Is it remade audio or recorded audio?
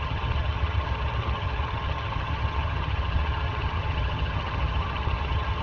remade